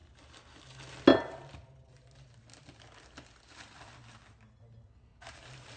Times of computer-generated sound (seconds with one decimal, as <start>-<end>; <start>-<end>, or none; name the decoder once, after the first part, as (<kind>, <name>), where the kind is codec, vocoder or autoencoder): 5.1-5.8 (vocoder, BigVGAN v2)